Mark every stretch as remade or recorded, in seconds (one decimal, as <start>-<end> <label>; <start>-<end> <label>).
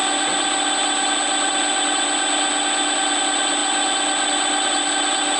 0.0-5.4 recorded